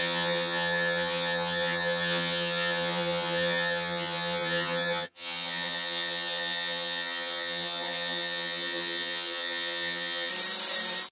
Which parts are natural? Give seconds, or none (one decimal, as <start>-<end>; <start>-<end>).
10.3-11.1

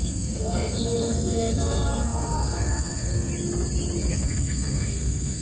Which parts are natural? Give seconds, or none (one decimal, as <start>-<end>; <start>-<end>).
3.3-4.1

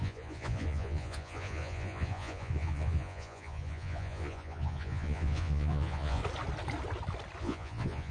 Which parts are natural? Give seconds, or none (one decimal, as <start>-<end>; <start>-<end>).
6.2-7.4